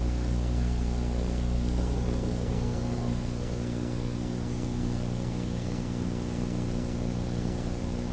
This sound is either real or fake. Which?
fake